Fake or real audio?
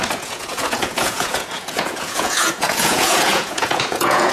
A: fake